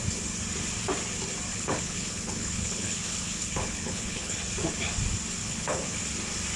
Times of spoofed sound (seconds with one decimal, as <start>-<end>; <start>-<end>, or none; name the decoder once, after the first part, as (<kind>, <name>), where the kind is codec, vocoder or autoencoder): 1.5-4.4 (codec, HILCodec); 5.4-6.0